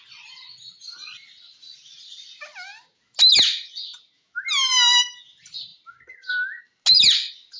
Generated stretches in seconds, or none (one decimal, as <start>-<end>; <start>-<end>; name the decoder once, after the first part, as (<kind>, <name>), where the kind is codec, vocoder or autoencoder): none